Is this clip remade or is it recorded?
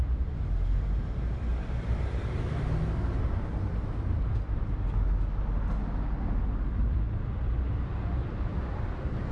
recorded